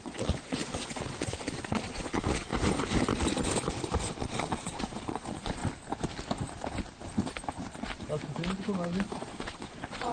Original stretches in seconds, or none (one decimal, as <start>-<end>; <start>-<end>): 2.5-4.2; 5.6-9.0